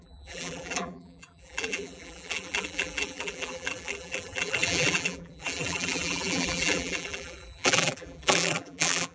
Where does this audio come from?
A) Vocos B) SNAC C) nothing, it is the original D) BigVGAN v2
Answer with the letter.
D